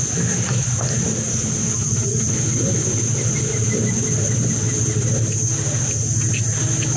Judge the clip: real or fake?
real